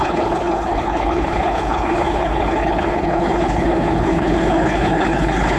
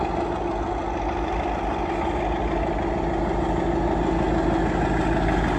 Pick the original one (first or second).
second